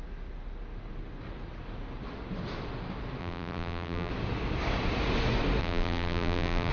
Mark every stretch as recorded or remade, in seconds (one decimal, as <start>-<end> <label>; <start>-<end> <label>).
0.0-3.2 recorded; 3.2-4.1 remade; 4.1-5.6 recorded; 5.6-6.7 remade